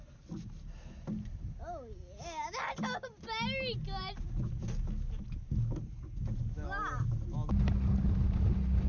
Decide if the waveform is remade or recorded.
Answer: recorded